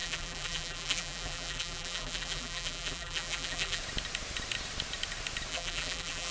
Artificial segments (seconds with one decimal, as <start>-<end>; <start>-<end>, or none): 0.0-3.8; 5.5-6.3